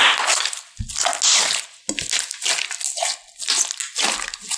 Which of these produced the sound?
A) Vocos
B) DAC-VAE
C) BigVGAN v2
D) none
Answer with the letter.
D